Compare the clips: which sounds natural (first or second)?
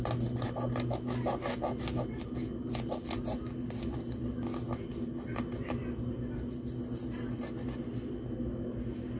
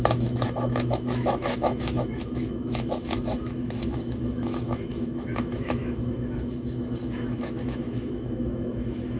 first